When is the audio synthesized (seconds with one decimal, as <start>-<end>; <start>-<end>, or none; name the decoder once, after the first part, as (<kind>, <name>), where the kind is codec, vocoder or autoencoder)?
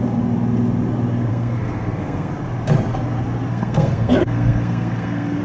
1.3-2.3 (codec, SNAC); 3.5-5.4